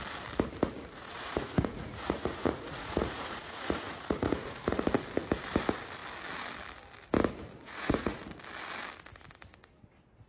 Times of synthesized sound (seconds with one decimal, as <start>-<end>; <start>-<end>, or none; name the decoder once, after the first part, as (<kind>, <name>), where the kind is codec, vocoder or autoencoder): 0.7-4.8 (vocoder, Vocos); 7.6-8.2